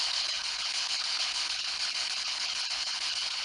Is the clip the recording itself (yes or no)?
no